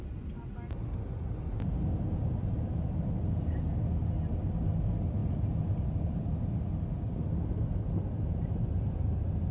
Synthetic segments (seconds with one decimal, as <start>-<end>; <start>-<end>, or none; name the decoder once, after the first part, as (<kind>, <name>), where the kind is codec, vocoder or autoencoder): none